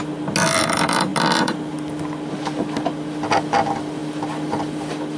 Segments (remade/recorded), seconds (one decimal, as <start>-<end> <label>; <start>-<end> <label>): 0.0-5.2 recorded